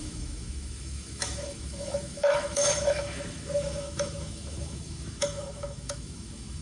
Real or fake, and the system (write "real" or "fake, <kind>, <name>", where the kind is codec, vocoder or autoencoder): fake, autoencoder, DAC-VAE